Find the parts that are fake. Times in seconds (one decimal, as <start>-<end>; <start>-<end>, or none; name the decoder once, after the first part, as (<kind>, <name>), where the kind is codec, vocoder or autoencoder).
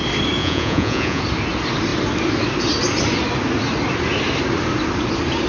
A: 0.4-1.2 (vocoder, Vocos)